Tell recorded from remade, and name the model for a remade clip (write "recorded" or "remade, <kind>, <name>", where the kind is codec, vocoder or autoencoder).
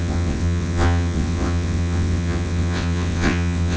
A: remade, vocoder, WaveNeXt